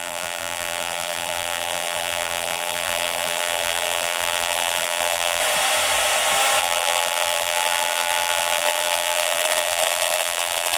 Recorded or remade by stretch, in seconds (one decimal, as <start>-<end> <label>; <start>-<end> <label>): 0.0-5.4 remade; 5.4-6.6 recorded; 6.6-10.8 remade